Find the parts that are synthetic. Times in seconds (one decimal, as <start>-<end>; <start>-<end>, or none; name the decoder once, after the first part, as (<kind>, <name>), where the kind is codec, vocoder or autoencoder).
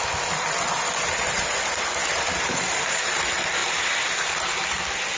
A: 2.0-3.2 (vocoder, BigVGAN v2); 3.6-4.3